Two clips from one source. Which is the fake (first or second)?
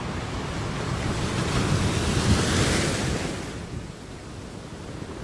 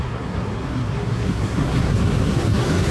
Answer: second